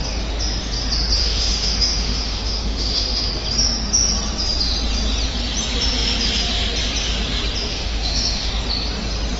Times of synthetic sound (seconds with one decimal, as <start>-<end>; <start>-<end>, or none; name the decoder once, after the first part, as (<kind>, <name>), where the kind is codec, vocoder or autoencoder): 1.2-3.3 (autoencoder, DAC-VAE); 7.7-8.5